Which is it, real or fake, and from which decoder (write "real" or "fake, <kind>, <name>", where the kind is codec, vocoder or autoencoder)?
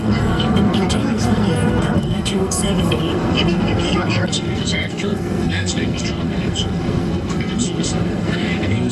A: fake, codec, SNAC